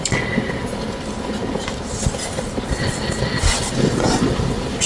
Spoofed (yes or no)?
no